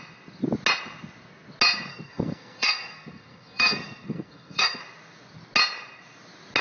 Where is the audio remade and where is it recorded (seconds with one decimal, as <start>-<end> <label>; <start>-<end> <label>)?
0.0-1.9 recorded; 1.9-4.8 remade; 4.8-6.6 recorded